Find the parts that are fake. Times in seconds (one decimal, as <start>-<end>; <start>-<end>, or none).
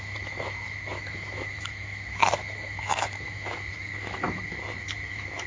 0.0-5.5